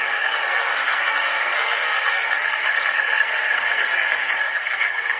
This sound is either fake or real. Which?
fake